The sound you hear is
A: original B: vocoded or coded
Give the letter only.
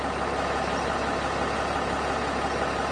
A